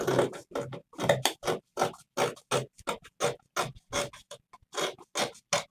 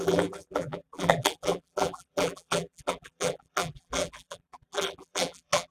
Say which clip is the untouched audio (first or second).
first